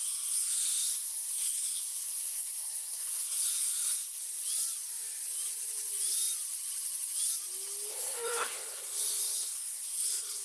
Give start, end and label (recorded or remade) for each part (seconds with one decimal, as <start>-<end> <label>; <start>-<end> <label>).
0.0-4.2 remade; 4.2-7.9 recorded; 7.9-10.4 remade

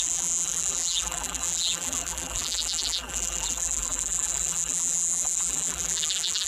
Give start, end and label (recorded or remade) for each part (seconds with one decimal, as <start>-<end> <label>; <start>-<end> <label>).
0.0-6.5 remade

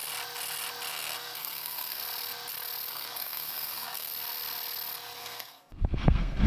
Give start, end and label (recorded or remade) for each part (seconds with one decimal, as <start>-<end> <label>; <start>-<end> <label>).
0.0-0.9 recorded; 0.9-2.0 remade; 2.0-2.9 recorded; 2.9-4.1 remade; 4.1-5.2 recorded; 5.2-6.5 remade

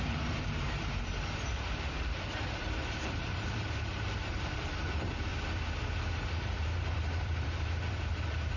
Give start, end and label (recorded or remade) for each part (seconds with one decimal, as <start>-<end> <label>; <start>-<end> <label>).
0.0-5.3 remade; 5.3-6.2 recorded; 6.2-8.6 remade

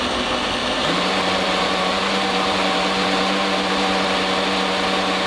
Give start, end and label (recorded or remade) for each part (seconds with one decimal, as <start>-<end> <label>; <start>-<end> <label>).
0.0-0.6 recorded; 0.6-3.8 remade; 3.8-5.3 recorded